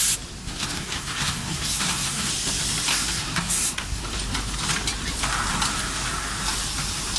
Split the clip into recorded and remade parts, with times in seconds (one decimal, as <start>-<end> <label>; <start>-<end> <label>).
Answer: 0.0-0.4 recorded; 0.4-2.3 remade; 2.3-2.9 recorded; 2.9-4.0 remade; 4.0-7.2 recorded

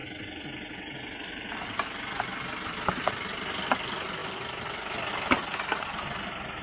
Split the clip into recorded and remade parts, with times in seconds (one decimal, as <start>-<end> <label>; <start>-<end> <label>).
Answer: 0.0-6.6 recorded

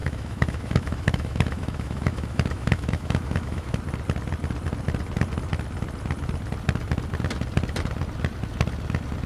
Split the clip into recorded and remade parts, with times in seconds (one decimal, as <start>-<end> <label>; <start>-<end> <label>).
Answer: 0.0-3.8 remade; 3.8-9.3 recorded